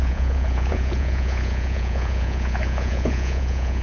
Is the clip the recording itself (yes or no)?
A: no